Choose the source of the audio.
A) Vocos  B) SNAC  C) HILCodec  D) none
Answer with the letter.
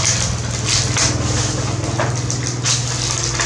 D